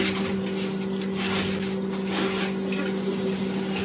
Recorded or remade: recorded